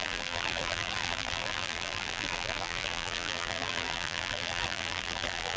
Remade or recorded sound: remade